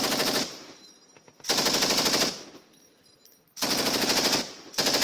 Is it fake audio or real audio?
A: real